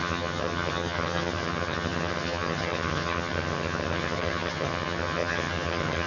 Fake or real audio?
fake